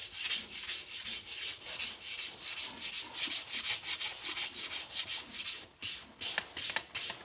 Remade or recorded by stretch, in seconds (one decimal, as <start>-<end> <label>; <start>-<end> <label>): 0.0-7.2 recorded